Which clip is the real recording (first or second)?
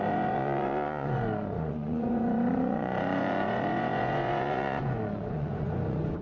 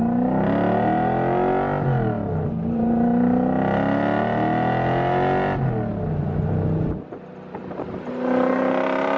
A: second